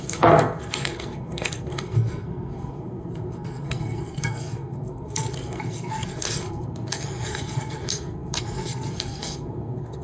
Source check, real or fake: fake